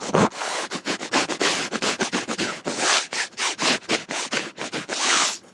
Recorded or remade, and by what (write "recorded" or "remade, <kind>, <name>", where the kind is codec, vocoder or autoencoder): remade, codec, HILCodec